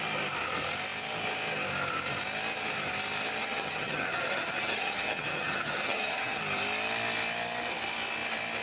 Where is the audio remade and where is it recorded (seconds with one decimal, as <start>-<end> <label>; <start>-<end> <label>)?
0.0-3.4 recorded; 3.4-6.4 remade; 6.4-8.6 recorded